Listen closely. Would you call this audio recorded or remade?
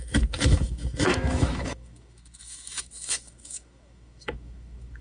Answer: remade